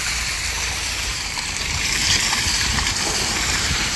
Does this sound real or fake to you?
fake